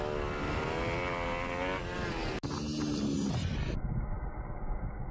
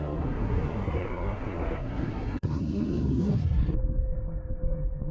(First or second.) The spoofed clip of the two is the second